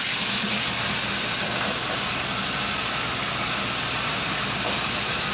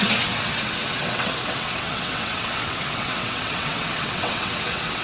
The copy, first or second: second